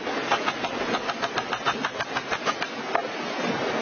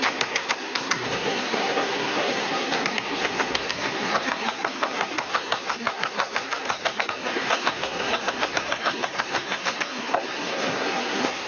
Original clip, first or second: first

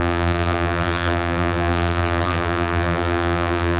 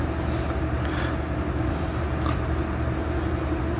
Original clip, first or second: second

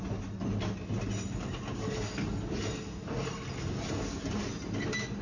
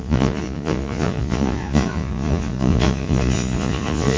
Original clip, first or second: first